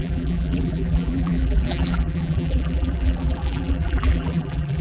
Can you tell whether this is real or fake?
fake